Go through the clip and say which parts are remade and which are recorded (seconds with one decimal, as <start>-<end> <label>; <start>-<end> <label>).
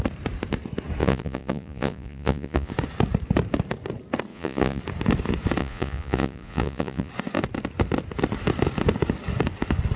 0.0-1.0 recorded; 1.0-2.7 remade; 2.7-4.3 recorded; 4.3-4.8 remade; 4.8-5.6 recorded; 5.6-7.1 remade; 7.1-10.0 recorded